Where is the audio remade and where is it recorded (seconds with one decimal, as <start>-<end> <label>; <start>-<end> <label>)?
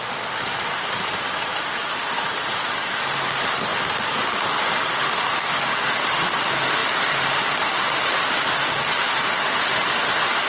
0.0-1.5 remade; 1.5-2.3 recorded; 2.3-3.7 remade; 3.7-5.5 recorded; 5.5-6.8 remade; 6.8-10.0 recorded; 10.0-10.5 remade